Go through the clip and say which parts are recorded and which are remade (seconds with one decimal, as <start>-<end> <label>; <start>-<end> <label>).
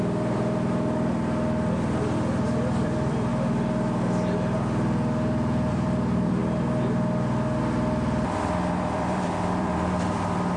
0.0-3.3 remade; 3.3-5.7 recorded; 5.7-6.4 remade; 6.4-7.6 recorded; 7.6-10.6 remade